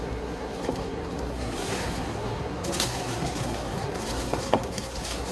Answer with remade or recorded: remade